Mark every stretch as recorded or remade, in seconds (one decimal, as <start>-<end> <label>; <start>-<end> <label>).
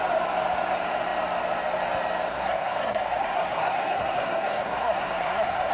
0.0-2.3 recorded; 2.3-5.7 remade